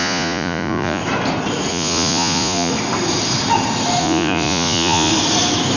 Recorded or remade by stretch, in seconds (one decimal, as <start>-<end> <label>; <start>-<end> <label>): 0.0-1.0 remade; 1.0-1.7 recorded; 1.7-2.7 remade; 2.7-4.0 recorded; 4.0-5.1 remade; 5.1-5.8 recorded